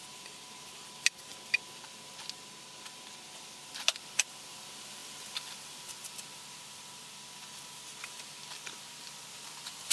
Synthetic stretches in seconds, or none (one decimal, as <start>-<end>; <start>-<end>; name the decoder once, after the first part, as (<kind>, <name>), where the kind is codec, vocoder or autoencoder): none